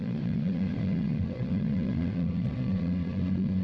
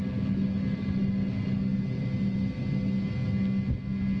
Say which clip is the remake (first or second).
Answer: first